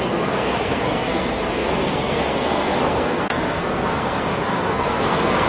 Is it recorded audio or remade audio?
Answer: remade